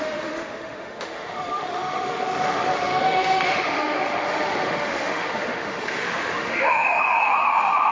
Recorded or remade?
remade